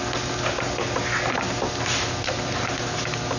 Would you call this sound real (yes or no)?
yes